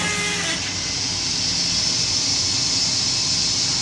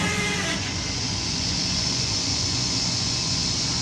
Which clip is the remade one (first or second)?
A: second